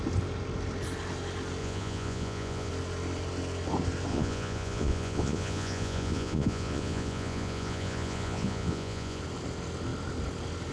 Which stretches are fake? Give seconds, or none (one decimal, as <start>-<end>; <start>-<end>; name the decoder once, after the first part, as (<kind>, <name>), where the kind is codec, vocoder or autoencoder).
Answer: 1.6-2.7 (vocoder, Vocos); 4.1-9.2